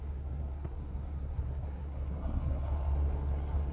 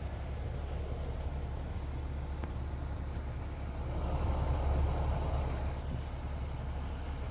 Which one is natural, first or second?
second